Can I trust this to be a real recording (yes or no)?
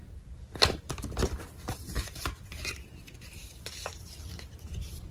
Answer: no